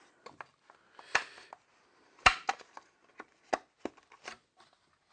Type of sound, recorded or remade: recorded